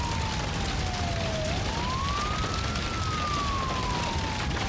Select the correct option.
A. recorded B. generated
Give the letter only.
A